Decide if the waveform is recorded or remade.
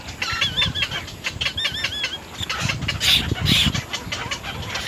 recorded